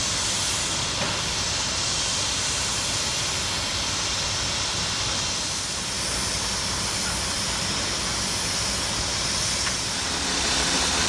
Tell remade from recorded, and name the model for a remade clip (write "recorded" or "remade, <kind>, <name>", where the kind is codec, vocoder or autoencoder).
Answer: recorded